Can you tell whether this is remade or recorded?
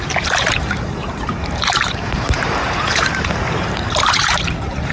remade